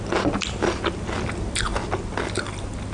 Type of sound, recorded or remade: recorded